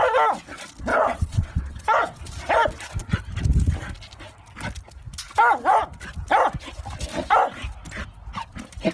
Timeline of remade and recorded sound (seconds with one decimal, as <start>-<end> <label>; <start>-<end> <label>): 0.0-0.9 recorded; 0.9-2.2 remade; 2.2-8.9 recorded